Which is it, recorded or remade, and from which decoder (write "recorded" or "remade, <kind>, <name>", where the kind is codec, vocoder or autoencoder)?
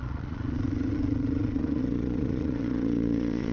remade, vocoder, Vocos